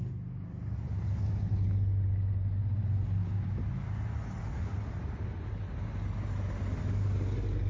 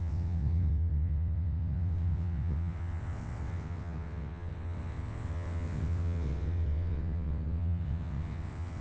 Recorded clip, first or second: first